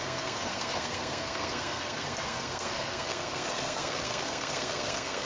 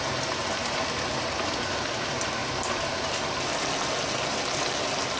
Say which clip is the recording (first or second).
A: second